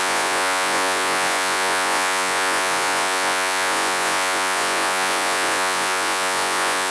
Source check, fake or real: fake